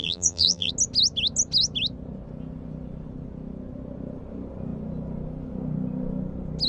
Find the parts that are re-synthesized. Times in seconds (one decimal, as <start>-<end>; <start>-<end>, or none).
0.0-0.7